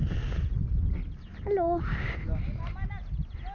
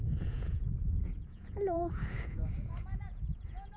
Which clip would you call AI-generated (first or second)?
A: second